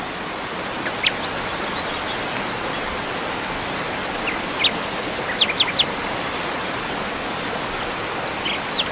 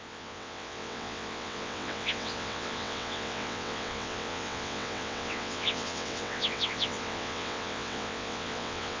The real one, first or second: first